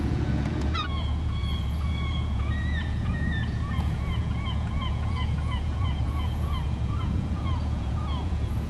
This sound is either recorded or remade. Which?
remade